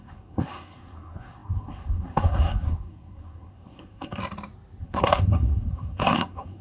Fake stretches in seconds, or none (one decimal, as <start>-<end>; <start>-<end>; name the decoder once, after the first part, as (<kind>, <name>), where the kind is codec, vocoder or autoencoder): 0.0-4.2 (codec, SNAC); 4.8-6.6